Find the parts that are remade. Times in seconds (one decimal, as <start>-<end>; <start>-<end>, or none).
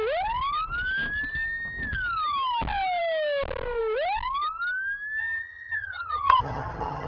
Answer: 5.2-7.1